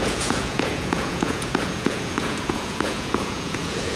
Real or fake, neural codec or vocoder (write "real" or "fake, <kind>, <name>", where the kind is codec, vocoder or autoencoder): fake, vocoder, Vocos